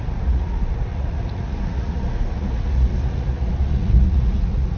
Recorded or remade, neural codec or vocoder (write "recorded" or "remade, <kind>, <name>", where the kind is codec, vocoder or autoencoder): remade, vocoder, Vocos